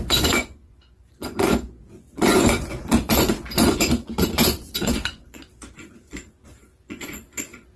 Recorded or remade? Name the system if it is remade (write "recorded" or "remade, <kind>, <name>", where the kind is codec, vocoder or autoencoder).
remade, vocoder, Vocos